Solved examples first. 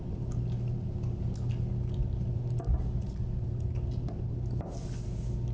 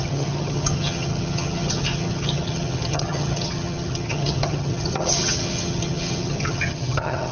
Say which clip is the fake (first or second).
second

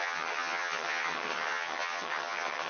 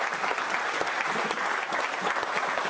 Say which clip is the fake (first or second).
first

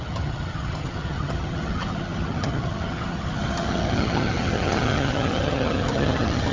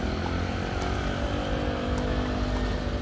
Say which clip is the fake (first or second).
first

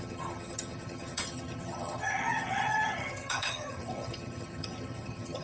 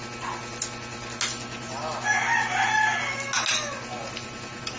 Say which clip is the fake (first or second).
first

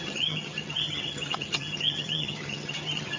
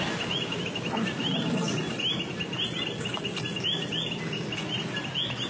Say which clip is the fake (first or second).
first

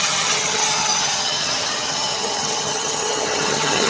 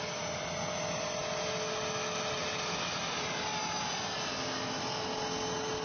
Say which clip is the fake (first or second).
first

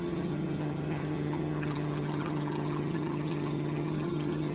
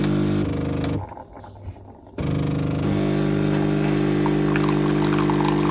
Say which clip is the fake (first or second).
first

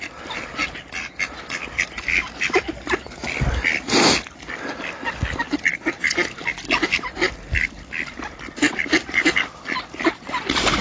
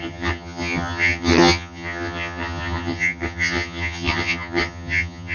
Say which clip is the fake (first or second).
second